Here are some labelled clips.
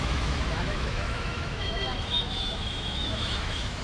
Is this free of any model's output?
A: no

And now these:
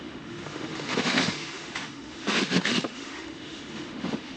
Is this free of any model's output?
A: no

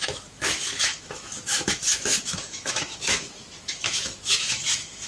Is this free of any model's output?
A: no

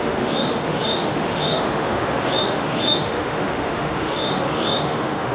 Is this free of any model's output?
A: no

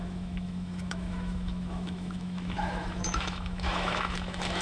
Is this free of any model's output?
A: no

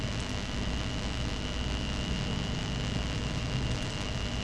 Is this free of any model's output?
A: yes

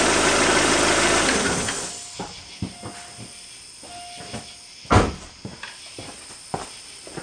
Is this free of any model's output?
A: yes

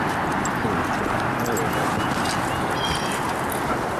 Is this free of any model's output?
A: yes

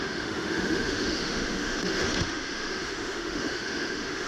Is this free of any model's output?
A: no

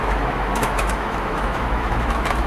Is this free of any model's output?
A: no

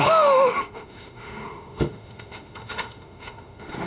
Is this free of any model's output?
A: no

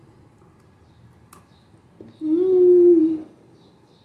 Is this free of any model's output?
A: yes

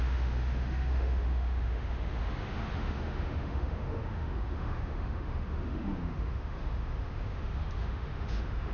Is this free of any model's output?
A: no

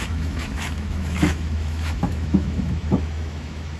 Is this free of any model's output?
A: no